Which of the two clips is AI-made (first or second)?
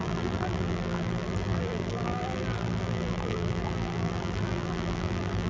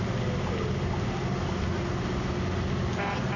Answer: first